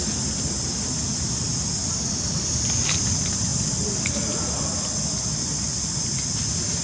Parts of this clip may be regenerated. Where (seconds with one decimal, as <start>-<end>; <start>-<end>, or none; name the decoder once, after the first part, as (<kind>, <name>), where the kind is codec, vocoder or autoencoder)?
none